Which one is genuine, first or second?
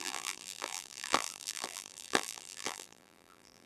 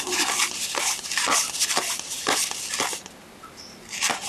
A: second